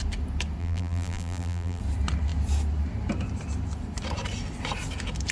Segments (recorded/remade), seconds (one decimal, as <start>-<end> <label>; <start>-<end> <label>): 0.0-0.6 recorded; 0.6-1.8 remade; 1.8-5.3 recorded